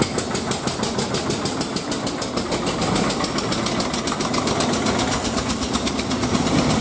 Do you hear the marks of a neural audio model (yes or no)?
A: no